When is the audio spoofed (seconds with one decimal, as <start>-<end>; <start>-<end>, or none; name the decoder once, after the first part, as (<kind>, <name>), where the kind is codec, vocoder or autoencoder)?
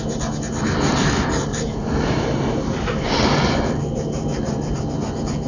1.5-4.8 (vocoder, BigVGAN v2)